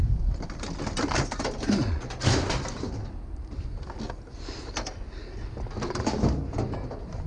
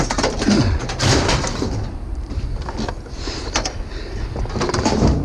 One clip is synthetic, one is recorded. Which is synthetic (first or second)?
second